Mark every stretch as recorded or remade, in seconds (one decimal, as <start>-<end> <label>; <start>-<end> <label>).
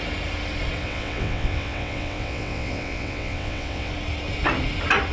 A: 0.0-0.8 recorded; 0.8-3.9 remade; 3.9-5.1 recorded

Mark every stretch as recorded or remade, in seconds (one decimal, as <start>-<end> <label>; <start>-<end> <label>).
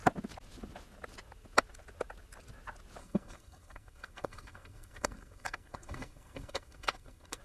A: 0.0-3.0 recorded; 3.0-7.4 remade